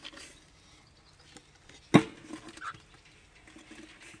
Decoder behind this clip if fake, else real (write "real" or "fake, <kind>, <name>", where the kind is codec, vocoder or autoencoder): real